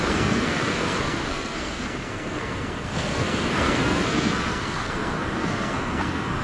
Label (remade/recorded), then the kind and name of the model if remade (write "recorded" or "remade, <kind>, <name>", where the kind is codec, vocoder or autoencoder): remade, codec, SNAC